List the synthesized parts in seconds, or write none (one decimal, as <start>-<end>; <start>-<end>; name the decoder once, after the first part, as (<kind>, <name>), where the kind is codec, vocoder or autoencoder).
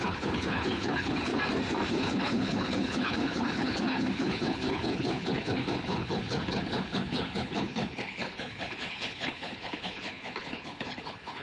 0.0-1.3 (codec, HILCodec); 1.9-11.4